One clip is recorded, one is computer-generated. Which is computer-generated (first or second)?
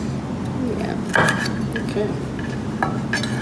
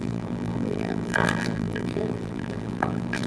second